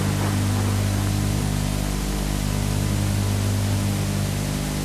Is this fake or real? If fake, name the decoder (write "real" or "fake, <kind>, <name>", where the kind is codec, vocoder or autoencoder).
real